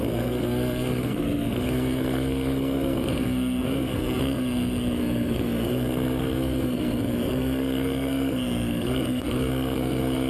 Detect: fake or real fake